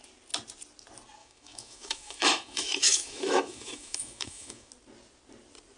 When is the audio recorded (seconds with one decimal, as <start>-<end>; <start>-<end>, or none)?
0.0-1.2; 4.7-5.8